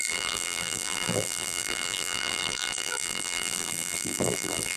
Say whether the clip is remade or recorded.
remade